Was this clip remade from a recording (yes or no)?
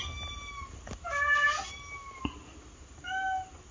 no